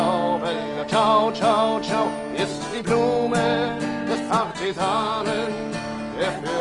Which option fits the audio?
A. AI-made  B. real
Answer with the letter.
B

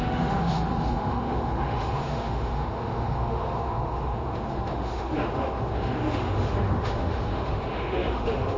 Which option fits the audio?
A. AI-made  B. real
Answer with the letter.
A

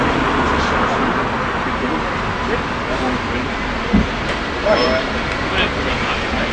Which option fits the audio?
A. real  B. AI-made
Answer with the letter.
A